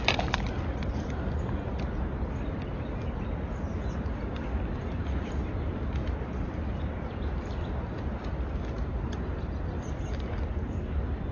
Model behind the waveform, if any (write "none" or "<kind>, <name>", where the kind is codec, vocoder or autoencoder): none